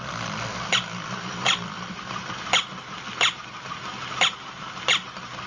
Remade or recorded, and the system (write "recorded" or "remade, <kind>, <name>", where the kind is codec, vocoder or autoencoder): recorded